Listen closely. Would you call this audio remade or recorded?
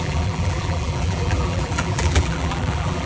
remade